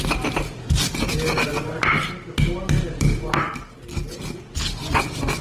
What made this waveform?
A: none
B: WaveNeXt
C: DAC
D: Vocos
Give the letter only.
A